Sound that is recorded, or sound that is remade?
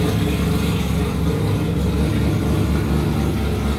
recorded